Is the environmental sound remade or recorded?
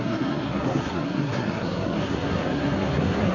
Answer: remade